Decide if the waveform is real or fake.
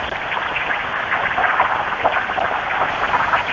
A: real